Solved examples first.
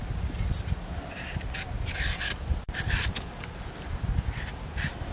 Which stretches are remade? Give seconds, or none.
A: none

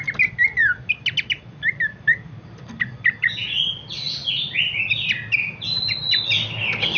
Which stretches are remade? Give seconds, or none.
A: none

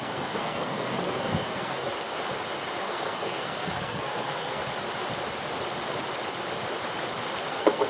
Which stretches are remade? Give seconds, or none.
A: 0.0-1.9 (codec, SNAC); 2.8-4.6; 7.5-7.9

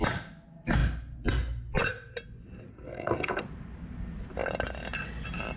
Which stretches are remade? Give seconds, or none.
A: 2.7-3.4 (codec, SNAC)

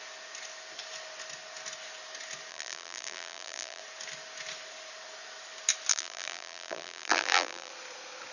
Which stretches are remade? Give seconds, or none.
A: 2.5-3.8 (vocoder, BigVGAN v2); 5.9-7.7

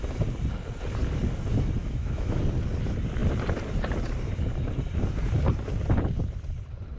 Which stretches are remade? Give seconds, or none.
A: 1.8-2.4 (autoencoder, DAC-VAE)

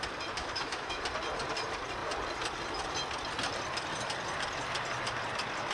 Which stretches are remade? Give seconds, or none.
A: 0.4-1.0 (autoencoder, DAC-VAE)

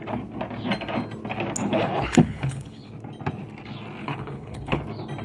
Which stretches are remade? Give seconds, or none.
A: 1.6-2.9 (codec, HILCodec); 4.0-4.8